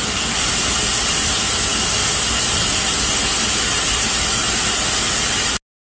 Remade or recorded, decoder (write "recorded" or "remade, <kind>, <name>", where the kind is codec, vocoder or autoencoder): recorded